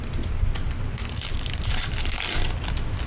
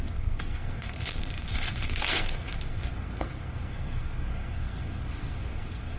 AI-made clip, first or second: second